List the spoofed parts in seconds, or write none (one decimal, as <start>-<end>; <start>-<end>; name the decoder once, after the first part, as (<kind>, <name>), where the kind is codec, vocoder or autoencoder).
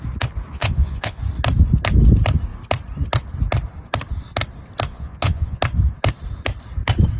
0.5-1.2 (vocoder, Vocos); 4.9-5.6